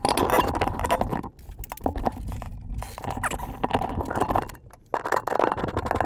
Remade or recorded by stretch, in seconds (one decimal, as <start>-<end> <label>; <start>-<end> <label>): 0.0-6.1 recorded